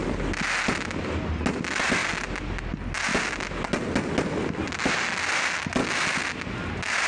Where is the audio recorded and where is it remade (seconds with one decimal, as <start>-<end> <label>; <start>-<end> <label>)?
0.0-7.1 recorded